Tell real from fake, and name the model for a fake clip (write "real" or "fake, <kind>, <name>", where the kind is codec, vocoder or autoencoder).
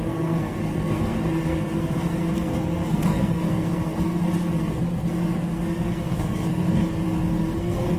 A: fake, codec, SNAC